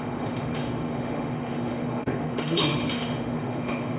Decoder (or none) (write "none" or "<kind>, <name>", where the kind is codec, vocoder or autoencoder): autoencoder, DAC-VAE